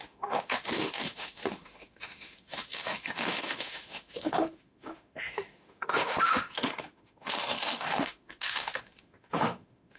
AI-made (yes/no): yes